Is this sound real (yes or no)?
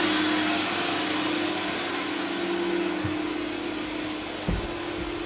yes